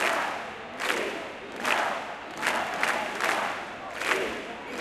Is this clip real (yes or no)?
yes